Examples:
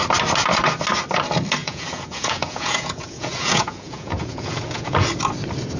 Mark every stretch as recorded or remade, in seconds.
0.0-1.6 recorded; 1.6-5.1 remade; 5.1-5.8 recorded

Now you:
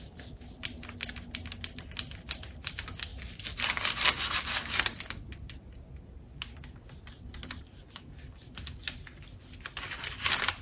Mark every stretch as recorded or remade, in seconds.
0.0-10.6 recorded

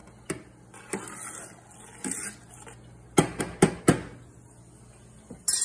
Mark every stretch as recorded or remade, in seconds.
0.0-5.6 recorded

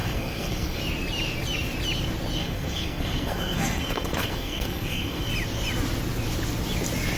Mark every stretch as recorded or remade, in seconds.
0.0-0.8 remade; 0.8-2.4 recorded; 2.4-5.3 remade; 5.3-7.2 recorded

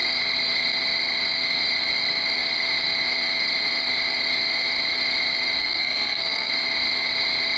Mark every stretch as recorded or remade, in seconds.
0.0-5.6 recorded; 5.6-6.5 remade; 6.5-7.6 recorded